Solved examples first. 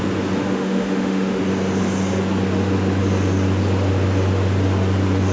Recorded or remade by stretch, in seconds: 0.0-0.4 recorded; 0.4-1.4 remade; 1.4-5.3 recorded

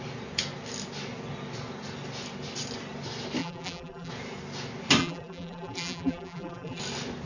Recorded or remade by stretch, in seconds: 0.0-3.4 recorded; 3.4-4.1 remade; 4.1-5.0 recorded; 5.0-6.8 remade; 6.8-7.3 recorded

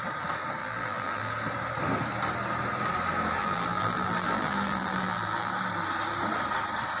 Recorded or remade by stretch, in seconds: 0.0-0.6 recorded; 0.6-1.3 remade; 1.3-3.4 recorded; 3.4-5.5 remade; 5.5-7.0 recorded